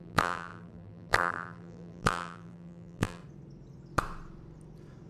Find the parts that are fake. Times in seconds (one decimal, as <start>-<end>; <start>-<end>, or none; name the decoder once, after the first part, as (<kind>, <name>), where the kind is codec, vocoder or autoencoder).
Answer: 0.0-3.2 (vocoder, BigVGAN v2)